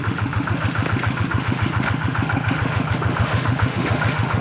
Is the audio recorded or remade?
remade